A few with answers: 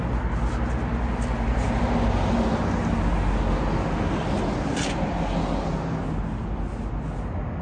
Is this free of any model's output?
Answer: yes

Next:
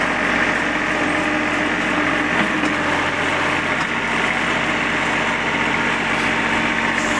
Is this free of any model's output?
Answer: yes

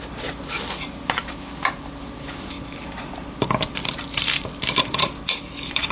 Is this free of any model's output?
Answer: no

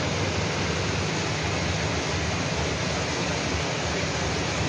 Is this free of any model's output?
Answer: yes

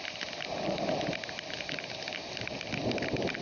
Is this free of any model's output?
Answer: yes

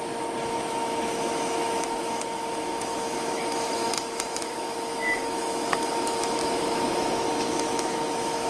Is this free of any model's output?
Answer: no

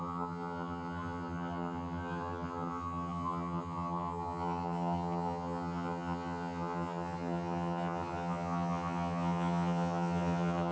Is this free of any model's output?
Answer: no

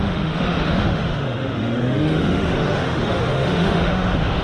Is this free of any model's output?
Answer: no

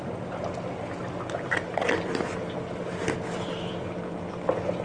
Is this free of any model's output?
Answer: yes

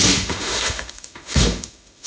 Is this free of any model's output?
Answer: no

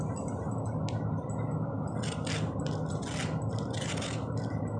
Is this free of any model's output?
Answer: yes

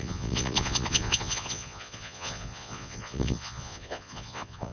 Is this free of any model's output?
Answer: no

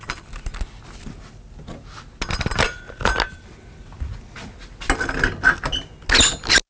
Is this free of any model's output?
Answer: yes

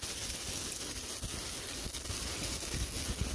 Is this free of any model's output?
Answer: yes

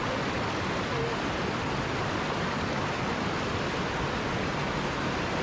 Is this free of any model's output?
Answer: yes